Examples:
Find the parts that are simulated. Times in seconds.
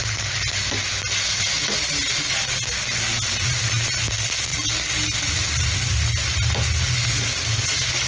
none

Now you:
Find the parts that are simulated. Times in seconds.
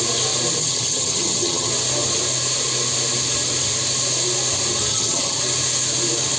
0.6-1.7 (vocoder, HiFi-GAN); 4.9-5.4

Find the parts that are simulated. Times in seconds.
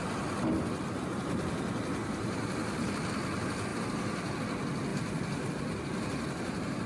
2.0-2.5 (vocoder, BigVGAN v2); 3.7-4.3; 4.9-6.9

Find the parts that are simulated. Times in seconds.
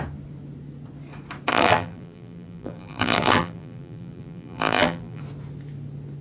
1.5-5.2 (vocoder, BigVGAN v2)